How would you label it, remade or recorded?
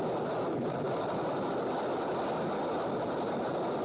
recorded